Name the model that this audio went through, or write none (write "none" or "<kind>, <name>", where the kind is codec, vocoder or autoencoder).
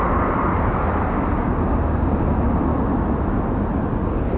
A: none